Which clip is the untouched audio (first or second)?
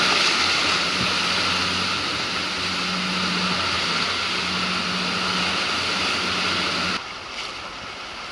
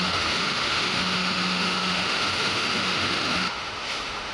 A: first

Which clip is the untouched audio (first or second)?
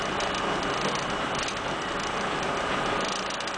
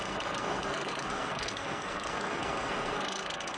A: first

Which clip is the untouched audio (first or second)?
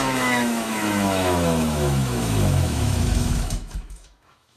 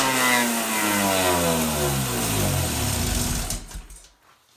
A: second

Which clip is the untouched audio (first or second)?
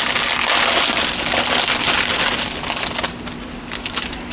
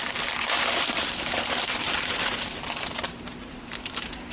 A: first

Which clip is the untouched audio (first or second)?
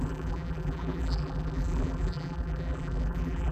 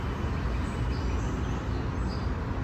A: second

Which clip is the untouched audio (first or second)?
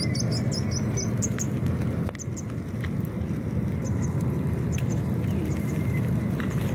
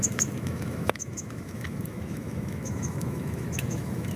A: first